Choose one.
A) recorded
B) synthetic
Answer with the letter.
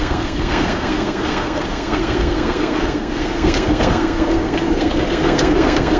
B